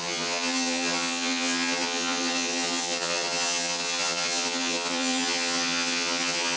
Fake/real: fake